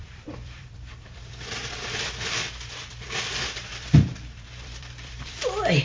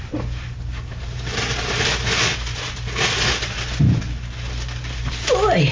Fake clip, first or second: first